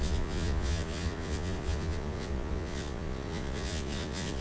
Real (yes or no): no